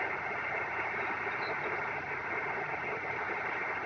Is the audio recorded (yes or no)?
yes